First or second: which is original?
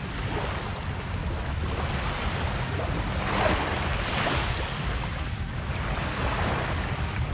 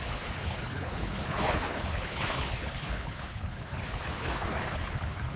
first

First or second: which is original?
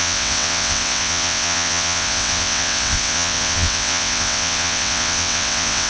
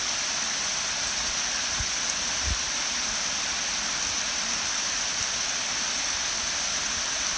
second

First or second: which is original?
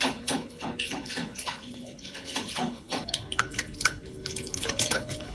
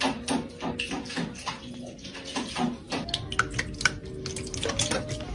second